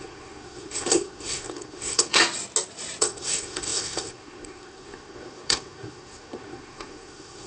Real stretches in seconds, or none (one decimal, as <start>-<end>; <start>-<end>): 2.2-3.0